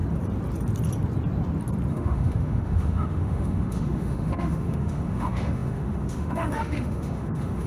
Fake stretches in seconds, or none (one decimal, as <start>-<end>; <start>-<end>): 1.9-7.7